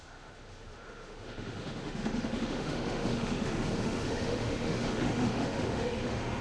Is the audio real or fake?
fake